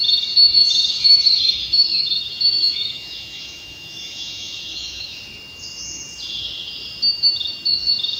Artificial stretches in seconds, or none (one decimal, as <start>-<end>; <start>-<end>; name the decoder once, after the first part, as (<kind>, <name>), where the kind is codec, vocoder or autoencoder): 1.1-2.3 (autoencoder, DAC-VAE); 2.7-5.2